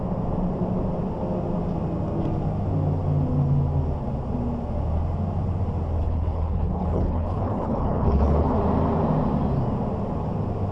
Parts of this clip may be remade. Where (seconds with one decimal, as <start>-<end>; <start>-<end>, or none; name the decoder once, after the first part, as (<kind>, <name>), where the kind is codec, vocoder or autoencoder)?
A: 6.0-8.6 (codec, HILCodec)